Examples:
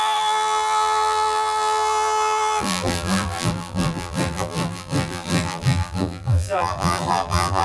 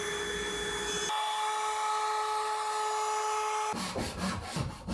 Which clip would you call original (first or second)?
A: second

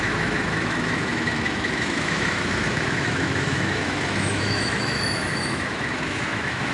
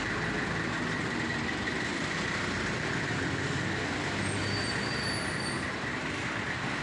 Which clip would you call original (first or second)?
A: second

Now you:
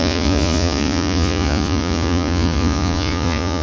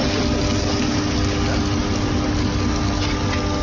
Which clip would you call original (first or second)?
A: second